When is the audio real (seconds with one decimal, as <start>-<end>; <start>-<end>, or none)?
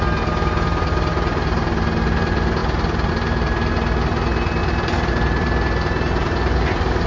0.0-4.6; 5.1-7.1